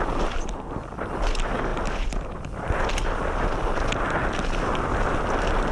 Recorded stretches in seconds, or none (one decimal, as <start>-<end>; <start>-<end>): 0.0-5.7